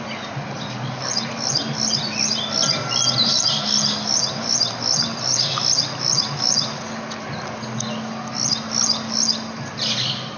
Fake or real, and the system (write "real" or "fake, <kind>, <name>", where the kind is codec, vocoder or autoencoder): real